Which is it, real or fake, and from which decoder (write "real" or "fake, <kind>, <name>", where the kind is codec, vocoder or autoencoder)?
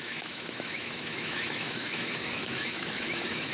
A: fake, autoencoder, DAC-VAE